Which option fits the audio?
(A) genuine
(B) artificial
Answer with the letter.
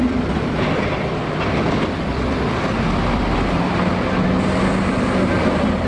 A